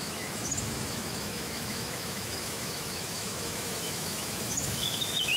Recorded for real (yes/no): no